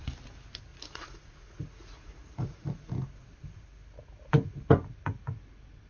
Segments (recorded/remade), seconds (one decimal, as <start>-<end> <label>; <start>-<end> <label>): 0.0-0.7 recorded; 0.7-2.9 remade; 2.9-5.9 recorded